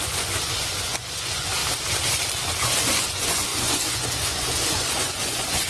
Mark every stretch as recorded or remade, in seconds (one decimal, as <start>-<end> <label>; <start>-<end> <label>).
0.0-1.6 remade; 1.6-2.6 recorded; 2.6-5.7 remade